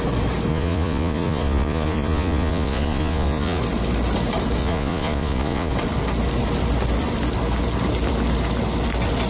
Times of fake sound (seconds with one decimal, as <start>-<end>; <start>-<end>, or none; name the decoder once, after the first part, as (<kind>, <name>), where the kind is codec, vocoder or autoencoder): 0.5-3.6 (vocoder, Vocos); 4.6-5.7